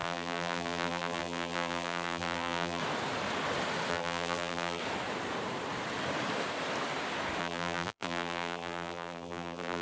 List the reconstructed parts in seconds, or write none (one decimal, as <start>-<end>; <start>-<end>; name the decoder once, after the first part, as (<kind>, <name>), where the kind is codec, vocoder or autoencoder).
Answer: 0.0-2.8 (vocoder, BigVGAN v2); 3.9-4.8; 7.4-9.8